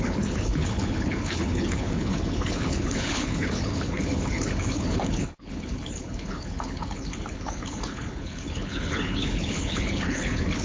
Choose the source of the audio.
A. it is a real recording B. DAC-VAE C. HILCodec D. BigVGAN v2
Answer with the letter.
C